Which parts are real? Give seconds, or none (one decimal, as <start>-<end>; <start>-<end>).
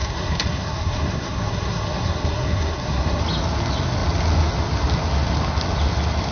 3.2-6.3